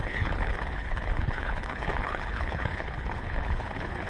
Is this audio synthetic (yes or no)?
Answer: yes